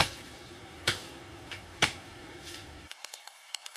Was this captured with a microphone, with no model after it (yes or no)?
no